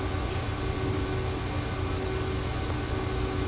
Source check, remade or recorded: recorded